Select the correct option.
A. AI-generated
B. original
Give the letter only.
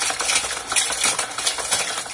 B